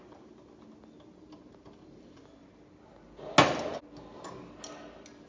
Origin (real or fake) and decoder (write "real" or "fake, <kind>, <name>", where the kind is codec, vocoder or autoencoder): real